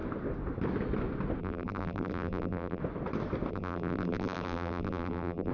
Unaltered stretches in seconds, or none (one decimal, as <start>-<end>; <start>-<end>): 0.0-1.4; 2.8-3.5